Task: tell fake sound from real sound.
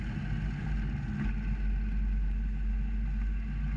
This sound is real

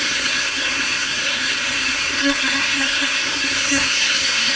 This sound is fake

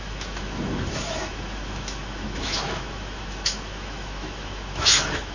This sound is fake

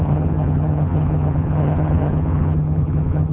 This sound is fake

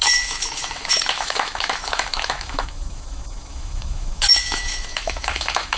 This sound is fake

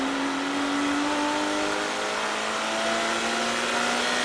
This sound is real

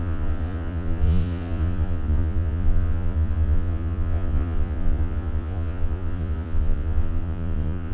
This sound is fake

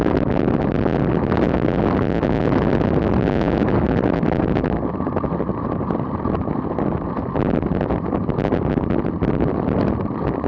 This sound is real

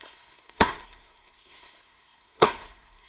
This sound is fake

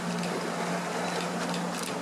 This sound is real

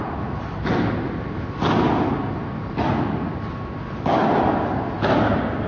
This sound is real